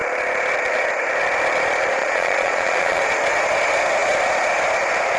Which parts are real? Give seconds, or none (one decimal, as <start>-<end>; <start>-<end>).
0.0-2.0; 3.0-5.2